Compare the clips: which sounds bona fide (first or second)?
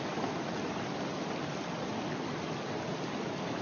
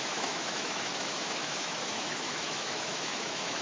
first